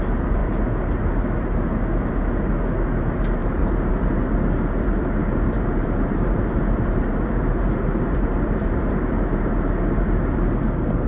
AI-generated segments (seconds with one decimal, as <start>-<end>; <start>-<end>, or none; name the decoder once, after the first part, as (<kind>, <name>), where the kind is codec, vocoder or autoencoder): 3.4-3.9 (vocoder, BigVGAN v2); 5.2-9.5